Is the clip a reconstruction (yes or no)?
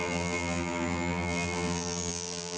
yes